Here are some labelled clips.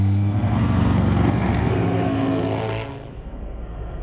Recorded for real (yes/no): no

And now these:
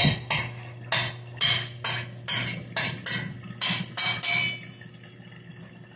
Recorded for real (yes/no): yes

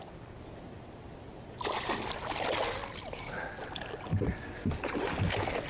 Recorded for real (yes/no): yes